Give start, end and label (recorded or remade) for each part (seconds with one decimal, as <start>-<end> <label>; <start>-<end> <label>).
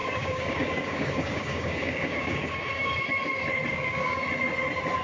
0.0-3.0 remade; 3.0-3.7 recorded; 3.7-4.2 remade; 4.2-5.0 recorded